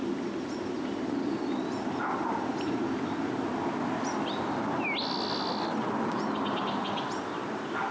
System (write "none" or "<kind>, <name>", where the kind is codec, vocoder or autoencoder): none